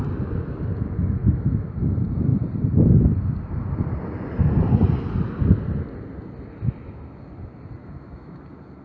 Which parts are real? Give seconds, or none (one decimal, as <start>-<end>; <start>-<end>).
0.0-1.2; 1.8-7.8; 8.4-8.8